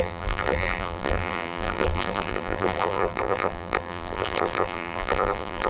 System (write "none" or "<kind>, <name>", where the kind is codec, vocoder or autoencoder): vocoder, BigVGAN v2